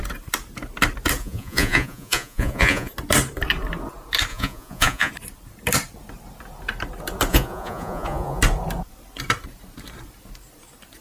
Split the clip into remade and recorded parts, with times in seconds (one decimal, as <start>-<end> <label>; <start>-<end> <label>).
0.0-1.2 recorded; 1.2-2.9 remade; 2.9-4.3 recorded; 4.3-5.1 remade; 5.1-7.3 recorded; 7.3-8.4 remade; 8.4-11.0 recorded